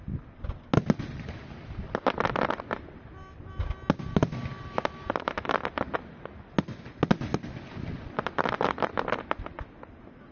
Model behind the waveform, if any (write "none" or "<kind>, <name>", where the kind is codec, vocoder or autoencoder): none